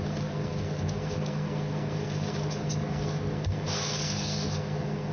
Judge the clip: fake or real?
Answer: fake